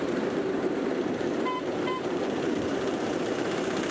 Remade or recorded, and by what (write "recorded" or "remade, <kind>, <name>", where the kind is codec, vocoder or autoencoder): remade, vocoder, BigVGAN v2